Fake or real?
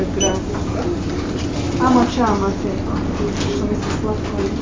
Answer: real